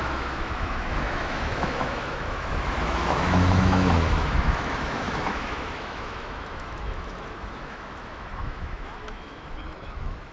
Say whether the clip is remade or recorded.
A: remade